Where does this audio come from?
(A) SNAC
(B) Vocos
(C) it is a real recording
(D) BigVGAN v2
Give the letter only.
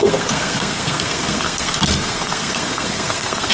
A